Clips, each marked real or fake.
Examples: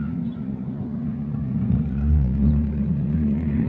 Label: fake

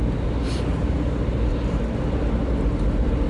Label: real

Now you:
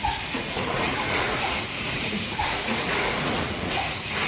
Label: fake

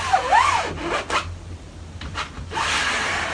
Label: real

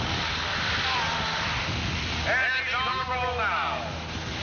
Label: real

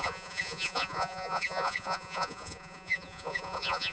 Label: fake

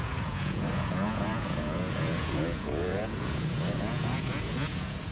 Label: fake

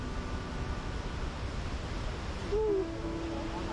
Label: real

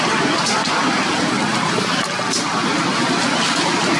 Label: real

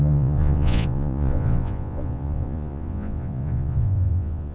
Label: fake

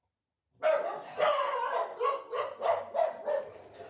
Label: real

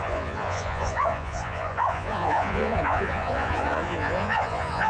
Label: fake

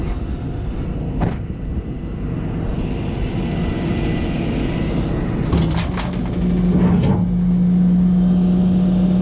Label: real